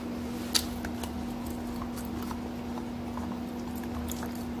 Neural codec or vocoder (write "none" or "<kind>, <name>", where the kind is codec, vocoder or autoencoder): none